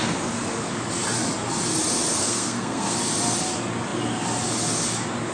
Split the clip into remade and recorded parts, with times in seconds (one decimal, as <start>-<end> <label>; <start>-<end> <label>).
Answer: 0.0-2.2 recorded; 2.2-3.0 remade; 3.0-5.3 recorded